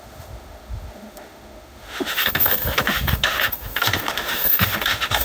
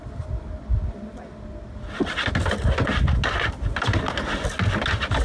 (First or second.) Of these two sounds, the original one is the second